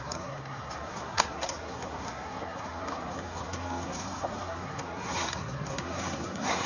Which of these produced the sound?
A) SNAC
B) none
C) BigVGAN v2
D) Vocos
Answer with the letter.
A